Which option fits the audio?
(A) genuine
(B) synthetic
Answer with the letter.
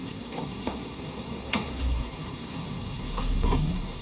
B